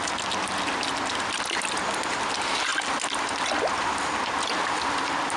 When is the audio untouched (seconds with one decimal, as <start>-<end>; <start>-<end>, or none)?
0.0-1.8; 2.7-5.0

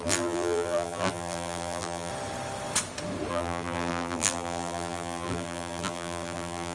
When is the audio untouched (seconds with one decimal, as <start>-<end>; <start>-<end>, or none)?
2.1-3.3

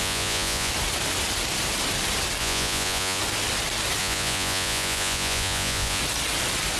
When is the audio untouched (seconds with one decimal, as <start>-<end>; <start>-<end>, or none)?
0.7-2.4; 3.2-4.0; 6.0-6.8

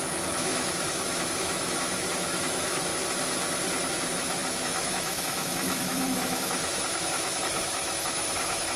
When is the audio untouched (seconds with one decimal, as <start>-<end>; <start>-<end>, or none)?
2.9-3.9

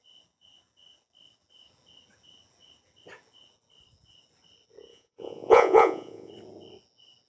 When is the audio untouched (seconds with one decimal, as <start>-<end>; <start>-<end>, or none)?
0.0-4.9; 6.3-7.3

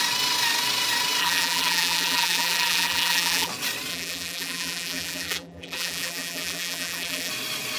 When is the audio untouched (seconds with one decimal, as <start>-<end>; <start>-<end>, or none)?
0.0-1.2; 3.5-3.9; 7.3-7.8

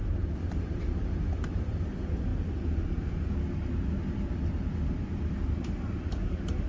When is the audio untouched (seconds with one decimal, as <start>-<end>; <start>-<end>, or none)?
1.6-2.3; 5.3-6.7

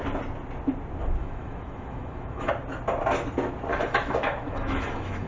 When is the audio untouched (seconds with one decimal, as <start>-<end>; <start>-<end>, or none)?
0.0-1.2; 2.5-3.7